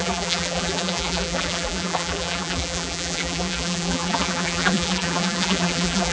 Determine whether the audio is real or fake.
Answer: fake